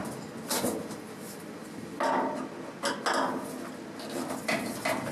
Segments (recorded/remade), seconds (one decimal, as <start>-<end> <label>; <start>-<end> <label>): 0.0-5.1 recorded